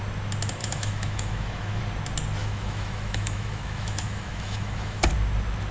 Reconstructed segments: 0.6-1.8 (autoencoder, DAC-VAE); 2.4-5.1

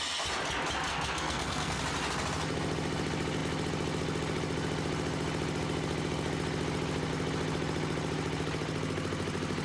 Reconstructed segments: 0.9-1.8 (codec, SNAC)

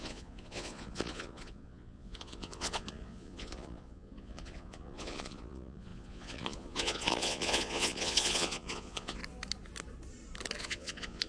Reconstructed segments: 0.0-9.2 (vocoder, Vocos); 10.6-11.3

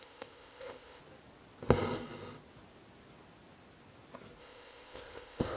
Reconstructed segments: 0.0-1.0 (codec, ZipCodec); 4.4-5.6

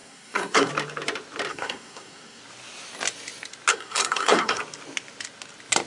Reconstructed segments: 0.0-0.7 (codec, SNAC); 1.5-2.4; 3.7-4.6

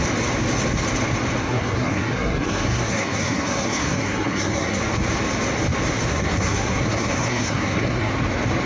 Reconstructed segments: 1.4-4.8 (codec, SNAC); 6.1-8.1

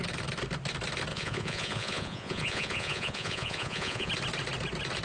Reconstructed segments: 1.1-4.1 (vocoder, Vocos)